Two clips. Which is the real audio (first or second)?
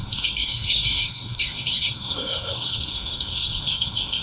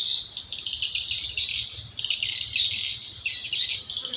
second